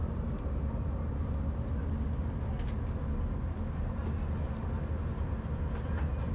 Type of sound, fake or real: real